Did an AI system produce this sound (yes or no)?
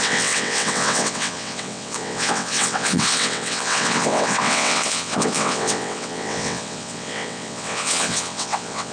yes